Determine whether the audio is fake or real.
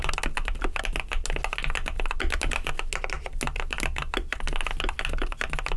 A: real